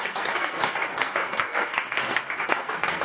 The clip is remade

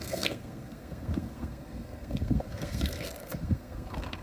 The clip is remade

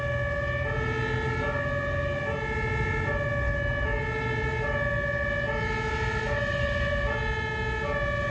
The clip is recorded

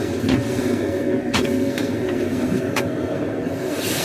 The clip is remade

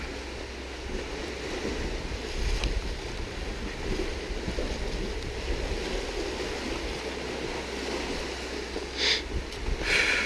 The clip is recorded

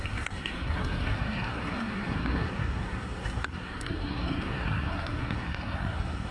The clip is remade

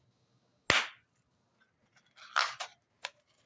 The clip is recorded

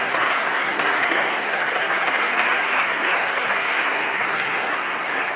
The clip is remade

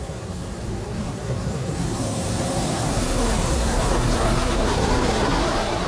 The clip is remade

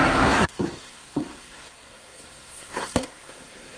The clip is remade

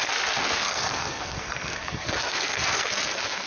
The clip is remade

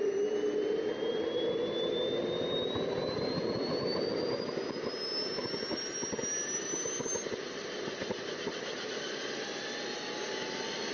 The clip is recorded